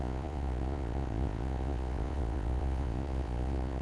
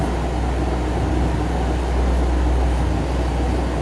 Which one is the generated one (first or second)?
first